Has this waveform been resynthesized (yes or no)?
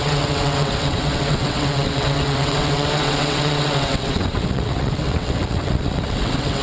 yes